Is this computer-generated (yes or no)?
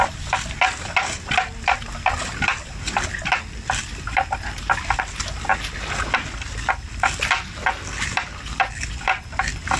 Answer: no